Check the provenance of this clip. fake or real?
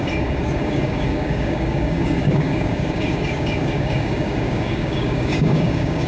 fake